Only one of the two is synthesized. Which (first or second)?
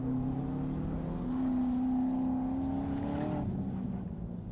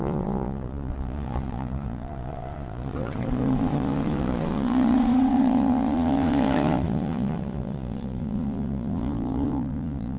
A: second